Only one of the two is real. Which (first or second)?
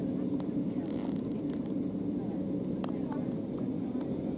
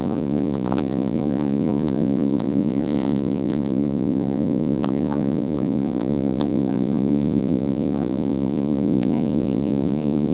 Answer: first